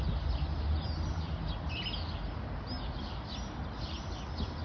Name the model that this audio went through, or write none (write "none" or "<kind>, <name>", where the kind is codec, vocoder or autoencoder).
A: none